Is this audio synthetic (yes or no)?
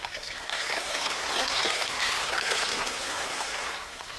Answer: yes